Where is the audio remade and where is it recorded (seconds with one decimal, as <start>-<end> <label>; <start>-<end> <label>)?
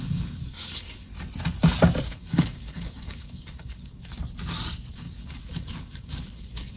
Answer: 0.0-1.1 remade; 1.1-2.1 recorded; 2.1-4.2 remade; 4.2-4.9 recorded; 4.9-6.8 remade